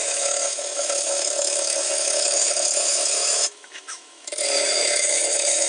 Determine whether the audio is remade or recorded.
remade